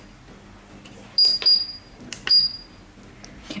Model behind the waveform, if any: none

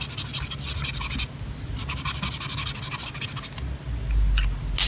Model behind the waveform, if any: none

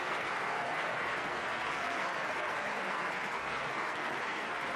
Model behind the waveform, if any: codec, SNAC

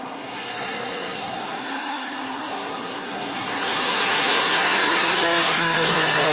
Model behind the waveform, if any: codec, SNAC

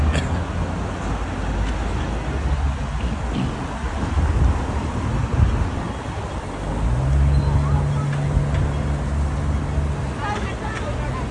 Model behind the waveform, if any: none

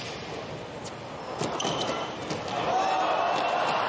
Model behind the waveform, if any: none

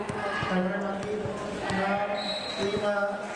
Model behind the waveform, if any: none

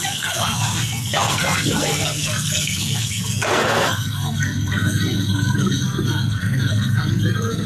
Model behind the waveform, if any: codec, SNAC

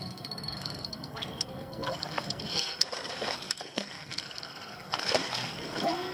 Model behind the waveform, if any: codec, SNAC